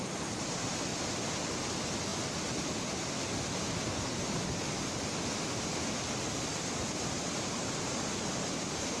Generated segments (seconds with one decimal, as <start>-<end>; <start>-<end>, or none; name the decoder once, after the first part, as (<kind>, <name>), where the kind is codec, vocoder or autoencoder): none